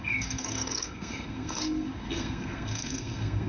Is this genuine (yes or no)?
no